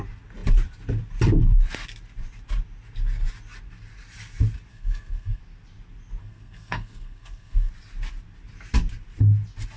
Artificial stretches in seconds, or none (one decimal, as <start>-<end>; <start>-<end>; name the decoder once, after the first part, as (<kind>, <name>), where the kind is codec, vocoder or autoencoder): 4.7-5.4 (codec, SNAC); 6.2-7.7